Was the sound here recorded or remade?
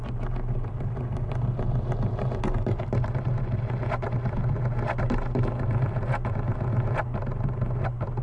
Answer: recorded